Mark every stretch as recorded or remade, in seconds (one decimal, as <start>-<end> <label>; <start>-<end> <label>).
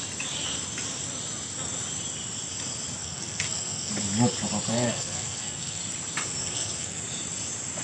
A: 0.0-3.0 recorded; 3.0-3.9 remade; 3.9-4.7 recorded; 4.7-5.8 remade; 5.8-6.4 recorded; 6.4-7.0 remade; 7.0-7.8 recorded